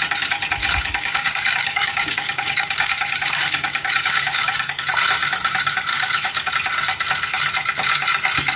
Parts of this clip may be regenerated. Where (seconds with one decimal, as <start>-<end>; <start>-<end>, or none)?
0.6-4.7; 5.9-6.5